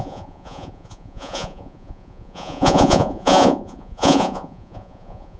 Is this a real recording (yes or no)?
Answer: no